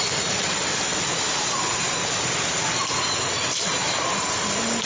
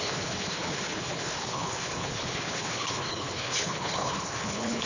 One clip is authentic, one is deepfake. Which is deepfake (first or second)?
second